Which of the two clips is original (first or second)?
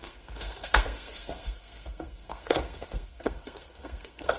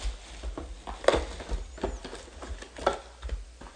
second